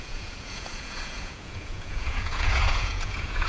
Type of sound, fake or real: fake